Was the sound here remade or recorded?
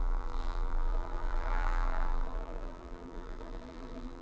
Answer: remade